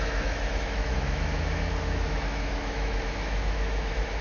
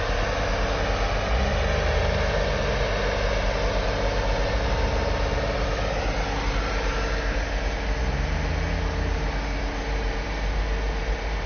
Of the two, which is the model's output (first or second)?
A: first